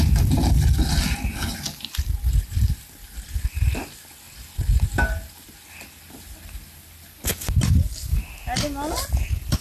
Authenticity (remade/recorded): recorded